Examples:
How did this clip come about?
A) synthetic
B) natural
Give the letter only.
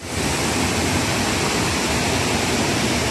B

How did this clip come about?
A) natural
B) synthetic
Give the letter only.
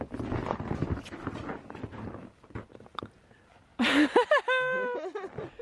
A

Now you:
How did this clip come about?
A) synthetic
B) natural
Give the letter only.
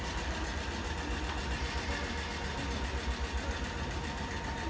B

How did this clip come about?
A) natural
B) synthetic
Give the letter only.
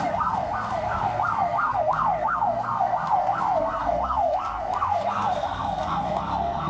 B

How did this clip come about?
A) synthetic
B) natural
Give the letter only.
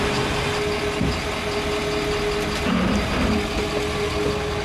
B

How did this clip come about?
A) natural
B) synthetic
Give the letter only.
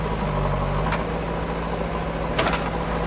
A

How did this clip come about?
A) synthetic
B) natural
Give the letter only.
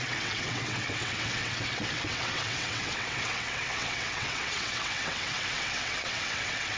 A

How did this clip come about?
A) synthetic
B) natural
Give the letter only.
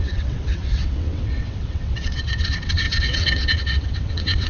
A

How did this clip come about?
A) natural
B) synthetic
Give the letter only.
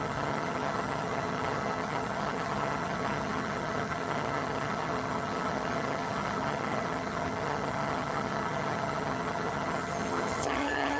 B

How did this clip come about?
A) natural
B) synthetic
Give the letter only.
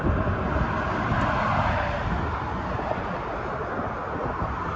A